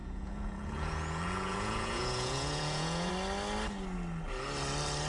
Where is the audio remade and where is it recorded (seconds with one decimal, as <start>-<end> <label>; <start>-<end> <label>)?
0.0-3.1 remade; 3.1-5.1 recorded